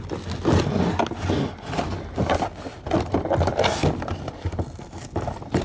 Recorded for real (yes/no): yes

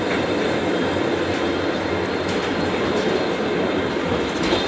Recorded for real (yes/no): yes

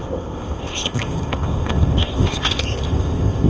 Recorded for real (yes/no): no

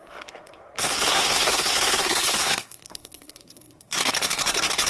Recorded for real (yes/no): no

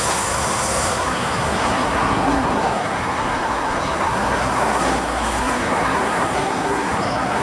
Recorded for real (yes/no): no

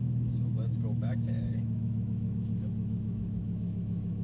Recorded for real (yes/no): no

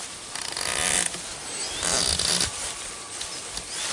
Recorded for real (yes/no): yes